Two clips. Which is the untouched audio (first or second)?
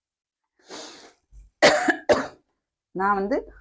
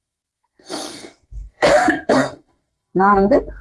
first